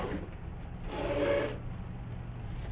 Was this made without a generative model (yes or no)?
yes